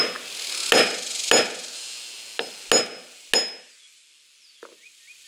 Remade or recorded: recorded